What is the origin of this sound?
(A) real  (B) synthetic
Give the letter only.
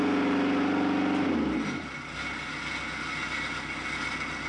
A